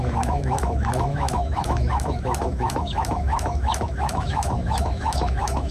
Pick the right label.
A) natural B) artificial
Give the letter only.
B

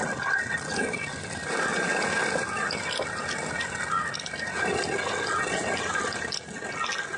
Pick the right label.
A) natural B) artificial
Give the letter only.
A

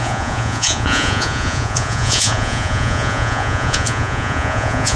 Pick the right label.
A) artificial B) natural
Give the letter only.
A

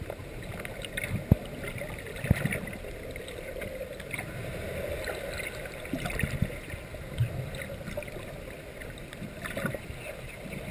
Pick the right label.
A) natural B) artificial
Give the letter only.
A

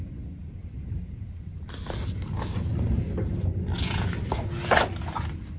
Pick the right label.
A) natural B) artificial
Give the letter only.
A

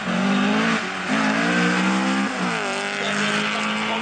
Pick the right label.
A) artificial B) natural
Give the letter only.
B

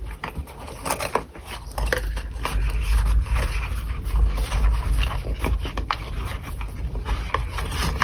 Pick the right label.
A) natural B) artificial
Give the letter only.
A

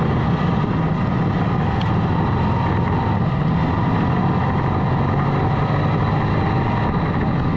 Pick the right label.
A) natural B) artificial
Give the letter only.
A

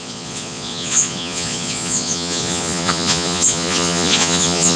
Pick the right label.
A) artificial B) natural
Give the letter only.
A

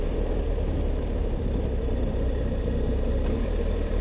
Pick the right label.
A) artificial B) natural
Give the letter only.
A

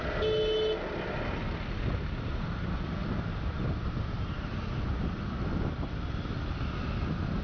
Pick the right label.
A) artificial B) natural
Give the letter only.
B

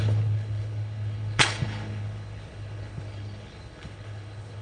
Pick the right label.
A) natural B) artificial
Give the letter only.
B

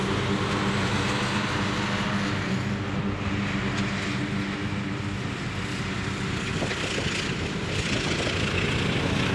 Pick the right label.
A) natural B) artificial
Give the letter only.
A